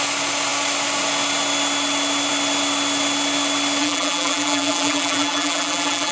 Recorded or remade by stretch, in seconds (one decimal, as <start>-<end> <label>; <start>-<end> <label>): 0.0-3.8 recorded; 3.8-6.1 remade